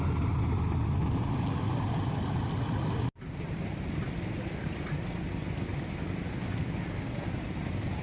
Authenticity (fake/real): real